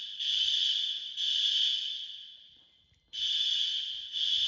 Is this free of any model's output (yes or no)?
no